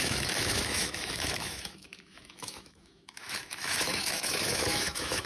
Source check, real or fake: fake